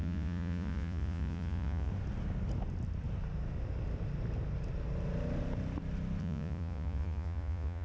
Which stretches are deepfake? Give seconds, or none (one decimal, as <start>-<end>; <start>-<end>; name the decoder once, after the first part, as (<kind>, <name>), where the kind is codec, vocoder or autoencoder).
0.0-1.9 (vocoder, Vocos); 6.2-7.8